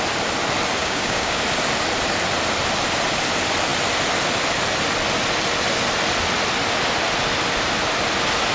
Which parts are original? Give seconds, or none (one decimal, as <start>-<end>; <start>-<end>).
0.0-0.8; 1.4-8.5